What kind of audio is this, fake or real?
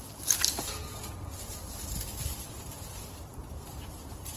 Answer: real